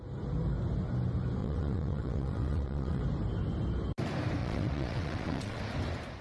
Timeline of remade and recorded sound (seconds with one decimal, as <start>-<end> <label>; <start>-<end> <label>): 0.0-1.4 recorded; 1.4-3.0 remade; 3.0-4.4 recorded; 4.4-5.6 remade; 5.6-6.2 recorded